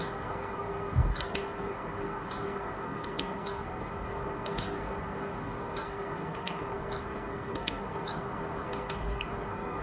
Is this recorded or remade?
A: remade